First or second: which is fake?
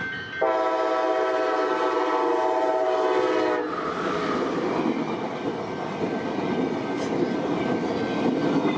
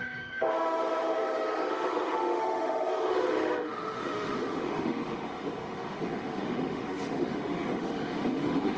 second